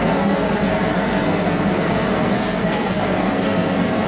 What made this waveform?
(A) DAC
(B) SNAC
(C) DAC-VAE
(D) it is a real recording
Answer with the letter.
B